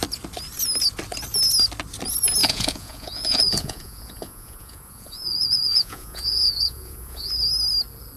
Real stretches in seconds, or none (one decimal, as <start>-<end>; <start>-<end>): 0.0-2.4; 7.3-8.2